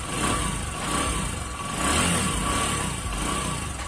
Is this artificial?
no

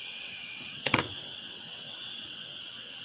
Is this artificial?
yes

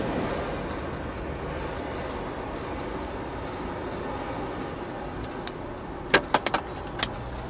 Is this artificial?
no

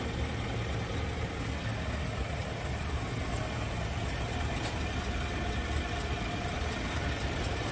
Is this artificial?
no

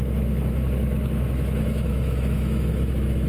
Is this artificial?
yes